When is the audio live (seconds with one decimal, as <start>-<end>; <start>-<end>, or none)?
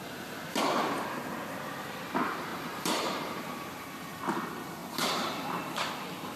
0.0-2.5; 4.2-4.8; 5.9-6.4